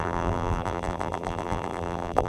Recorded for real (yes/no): no